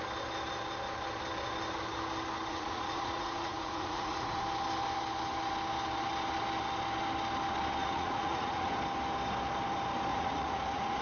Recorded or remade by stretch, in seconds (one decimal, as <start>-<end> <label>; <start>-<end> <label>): 0.0-2.5 recorded; 2.5-4.4 remade; 4.4-7.8 recorded; 7.8-8.7 remade; 8.7-10.1 recorded; 10.1-11.0 remade